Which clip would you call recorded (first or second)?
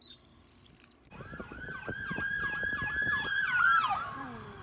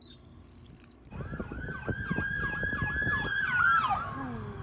second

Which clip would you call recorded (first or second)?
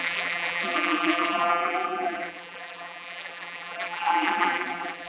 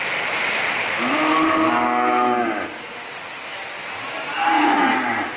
second